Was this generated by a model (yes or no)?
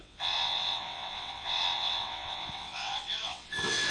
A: yes